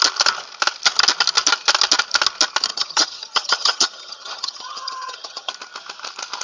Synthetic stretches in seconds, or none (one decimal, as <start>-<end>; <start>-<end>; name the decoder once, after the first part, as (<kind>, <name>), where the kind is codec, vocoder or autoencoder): 2.7-5.5 (vocoder, HiFi-GAN)